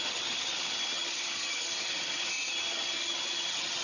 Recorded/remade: remade